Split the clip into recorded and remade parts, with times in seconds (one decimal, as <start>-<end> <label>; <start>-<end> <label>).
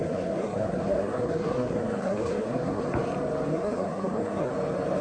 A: 0.0-2.8 remade; 2.8-3.5 recorded; 3.5-4.5 remade; 4.5-5.0 recorded